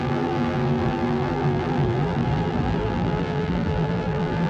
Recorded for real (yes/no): no